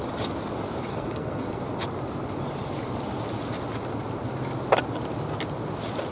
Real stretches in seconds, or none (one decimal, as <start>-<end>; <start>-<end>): 0.0-0.9; 1.6-6.1